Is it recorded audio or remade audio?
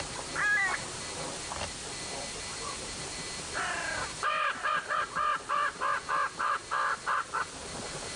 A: recorded